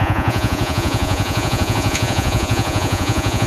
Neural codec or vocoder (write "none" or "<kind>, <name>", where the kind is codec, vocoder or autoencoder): vocoder, Vocos